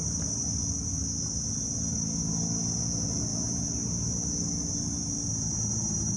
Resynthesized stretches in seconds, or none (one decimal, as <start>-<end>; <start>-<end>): none